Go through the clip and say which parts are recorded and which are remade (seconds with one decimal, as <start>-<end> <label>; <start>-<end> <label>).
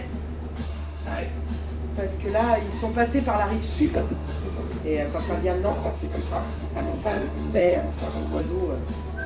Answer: 0.0-0.6 recorded; 0.6-1.2 remade; 1.2-3.7 recorded; 3.7-4.4 remade; 4.4-5.7 recorded; 5.7-8.4 remade; 8.4-9.3 recorded